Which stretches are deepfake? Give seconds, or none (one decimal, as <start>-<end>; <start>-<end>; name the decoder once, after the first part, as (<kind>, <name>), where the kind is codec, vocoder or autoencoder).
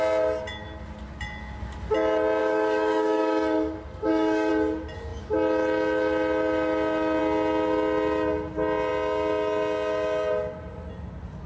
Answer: 2.4-4.5 (codec, DAC)